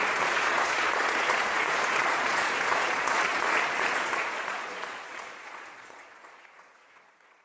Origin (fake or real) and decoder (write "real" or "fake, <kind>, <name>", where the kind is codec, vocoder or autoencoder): fake, vocoder, Vocos